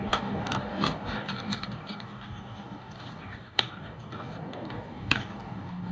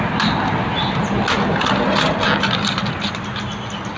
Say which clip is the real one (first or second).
second